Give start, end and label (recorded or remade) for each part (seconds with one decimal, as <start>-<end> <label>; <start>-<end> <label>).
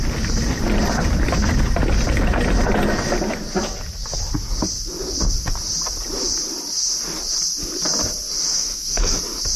0.0-8.5 recorded; 8.5-9.2 remade; 9.2-9.6 recorded